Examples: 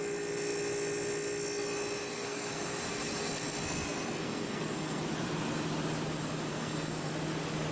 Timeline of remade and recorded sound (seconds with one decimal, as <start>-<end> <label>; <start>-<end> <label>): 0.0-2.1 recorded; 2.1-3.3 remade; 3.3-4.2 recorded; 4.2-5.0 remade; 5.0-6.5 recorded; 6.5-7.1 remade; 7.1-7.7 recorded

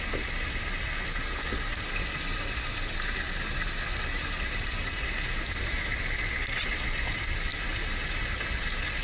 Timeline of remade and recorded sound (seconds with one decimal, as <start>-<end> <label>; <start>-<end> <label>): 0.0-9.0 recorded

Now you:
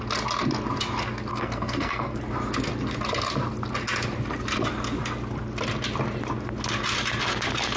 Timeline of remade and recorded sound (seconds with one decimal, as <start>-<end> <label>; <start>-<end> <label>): 0.0-1.3 recorded; 1.3-2.2 remade; 2.2-7.8 recorded

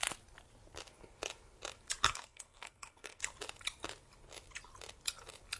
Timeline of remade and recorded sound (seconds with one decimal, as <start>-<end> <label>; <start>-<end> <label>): 0.0-2.1 recorded; 2.1-3.2 remade; 3.2-5.6 recorded

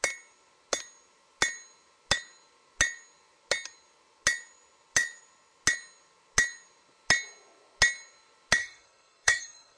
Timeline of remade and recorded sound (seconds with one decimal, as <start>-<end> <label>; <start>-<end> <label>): 0.0-8.6 recorded; 8.6-9.8 remade

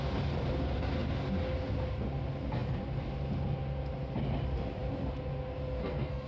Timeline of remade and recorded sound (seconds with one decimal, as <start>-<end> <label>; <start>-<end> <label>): 0.0-5.8 recorded; 5.8-6.3 remade